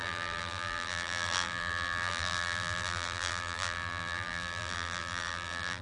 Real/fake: fake